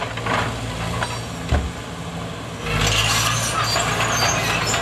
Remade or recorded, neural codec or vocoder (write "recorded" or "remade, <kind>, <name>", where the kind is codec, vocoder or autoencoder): recorded